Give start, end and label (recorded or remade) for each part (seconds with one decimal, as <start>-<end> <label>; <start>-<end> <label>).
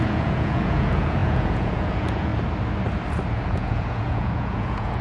0.0-2.3 remade; 2.3-3.4 recorded; 3.4-5.0 remade